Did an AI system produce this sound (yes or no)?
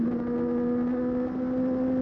no